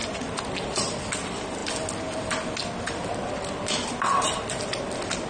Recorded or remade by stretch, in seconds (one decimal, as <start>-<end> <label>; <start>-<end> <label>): 0.0-5.3 recorded